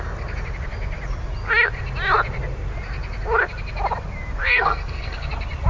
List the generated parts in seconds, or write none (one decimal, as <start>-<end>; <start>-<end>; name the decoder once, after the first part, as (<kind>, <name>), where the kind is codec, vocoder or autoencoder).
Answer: 4.4-5.3 (codec, SNAC)